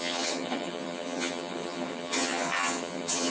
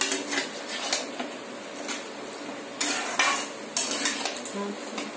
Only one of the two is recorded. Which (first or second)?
second